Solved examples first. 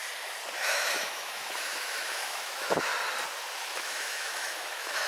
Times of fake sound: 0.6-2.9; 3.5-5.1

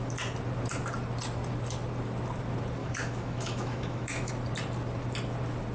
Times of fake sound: 2.8-4.3

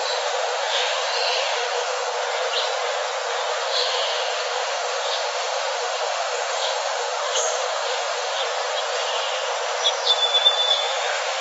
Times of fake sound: 0.0-2.1; 3.5-8.4; 10.7-11.4

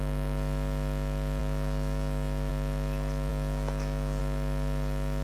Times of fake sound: 1.4-2.5; 3.3-4.2

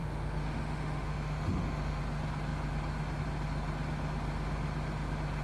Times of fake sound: 0.0-2.0

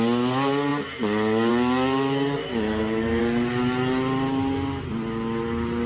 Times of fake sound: 2.4-3.2

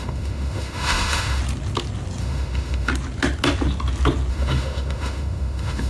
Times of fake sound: 0.0-1.4; 2.2-2.9; 4.3-5.9